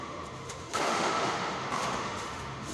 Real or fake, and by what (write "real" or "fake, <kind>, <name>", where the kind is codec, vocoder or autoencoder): fake, autoencoder, DAC-VAE